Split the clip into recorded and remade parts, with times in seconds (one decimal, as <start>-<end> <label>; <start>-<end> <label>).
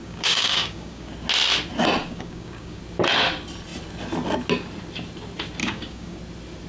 0.0-1.1 remade; 1.1-2.0 recorded; 2.0-2.8 remade; 2.8-5.6 recorded; 5.6-6.2 remade; 6.2-6.7 recorded